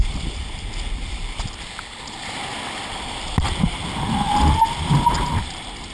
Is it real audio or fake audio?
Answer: real